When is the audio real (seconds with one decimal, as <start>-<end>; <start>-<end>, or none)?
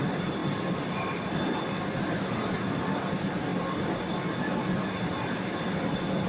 0.0-6.3